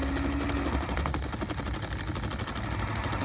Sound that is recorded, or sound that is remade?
recorded